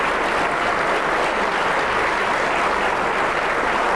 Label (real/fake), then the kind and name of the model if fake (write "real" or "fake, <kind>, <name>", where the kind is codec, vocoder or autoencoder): real